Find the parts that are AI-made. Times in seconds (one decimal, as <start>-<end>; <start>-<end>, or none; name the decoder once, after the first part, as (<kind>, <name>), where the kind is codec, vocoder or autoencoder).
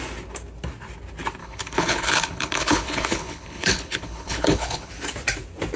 1.4-4.9 (codec, HILCodec)